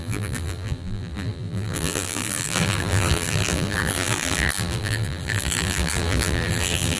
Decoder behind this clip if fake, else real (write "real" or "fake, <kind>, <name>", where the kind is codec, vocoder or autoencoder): fake, vocoder, BigVGAN v2